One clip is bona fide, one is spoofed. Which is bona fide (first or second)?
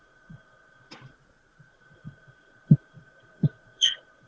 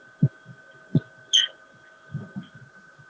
second